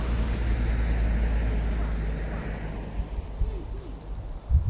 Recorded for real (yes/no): yes